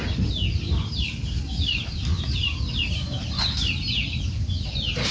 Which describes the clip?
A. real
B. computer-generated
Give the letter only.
A